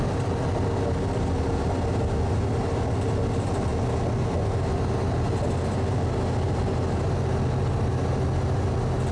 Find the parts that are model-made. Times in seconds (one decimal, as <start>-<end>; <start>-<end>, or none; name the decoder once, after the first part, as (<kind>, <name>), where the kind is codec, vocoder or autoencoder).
none